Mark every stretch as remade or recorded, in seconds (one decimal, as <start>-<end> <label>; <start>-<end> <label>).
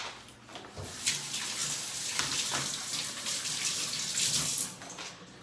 0.0-5.4 recorded